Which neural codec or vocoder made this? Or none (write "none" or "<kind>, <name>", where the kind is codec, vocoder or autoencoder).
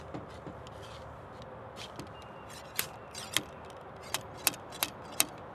none